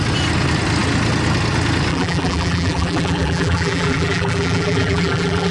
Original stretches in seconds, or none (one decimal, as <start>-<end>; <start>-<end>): 0.0-1.9

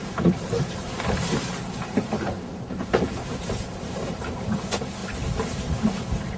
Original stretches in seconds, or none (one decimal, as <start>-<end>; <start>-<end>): 5.0-6.0